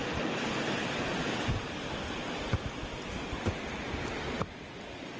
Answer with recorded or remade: recorded